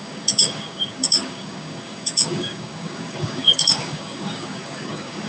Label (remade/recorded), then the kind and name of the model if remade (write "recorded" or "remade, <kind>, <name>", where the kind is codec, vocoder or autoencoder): remade, codec, DAC